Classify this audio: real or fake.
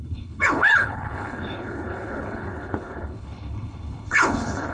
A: fake